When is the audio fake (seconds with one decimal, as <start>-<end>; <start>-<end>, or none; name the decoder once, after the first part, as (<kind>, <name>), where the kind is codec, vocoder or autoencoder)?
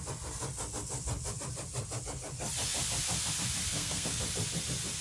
3.7-4.2 (codec, SNAC)